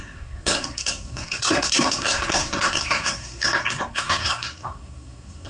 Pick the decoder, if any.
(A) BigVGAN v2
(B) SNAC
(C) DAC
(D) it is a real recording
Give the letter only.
B